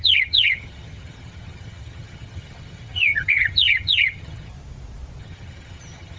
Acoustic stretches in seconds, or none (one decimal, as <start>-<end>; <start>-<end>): 4.5-5.2